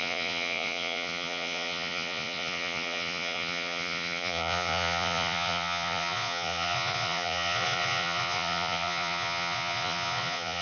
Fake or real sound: fake